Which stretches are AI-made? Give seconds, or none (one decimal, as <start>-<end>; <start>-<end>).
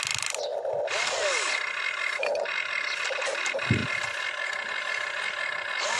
none